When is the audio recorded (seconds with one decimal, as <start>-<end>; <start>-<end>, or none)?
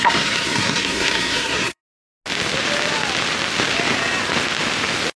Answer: 1.8-5.2